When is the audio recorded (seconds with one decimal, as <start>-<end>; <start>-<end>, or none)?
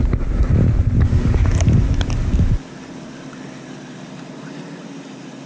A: 0.0-5.5